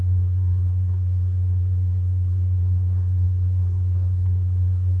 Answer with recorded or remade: remade